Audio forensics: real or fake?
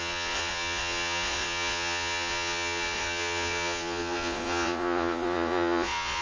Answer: fake